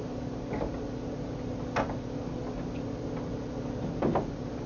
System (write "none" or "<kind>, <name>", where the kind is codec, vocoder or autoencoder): none